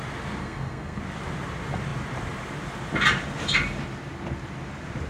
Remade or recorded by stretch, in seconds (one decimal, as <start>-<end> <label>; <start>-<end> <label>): 0.0-0.4 recorded; 0.4-1.0 remade; 1.0-5.1 recorded